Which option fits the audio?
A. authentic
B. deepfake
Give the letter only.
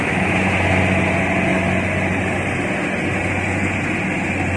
A